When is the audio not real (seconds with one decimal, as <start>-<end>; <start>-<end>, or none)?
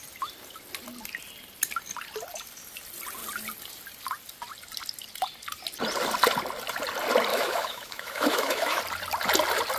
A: 7.3-8.8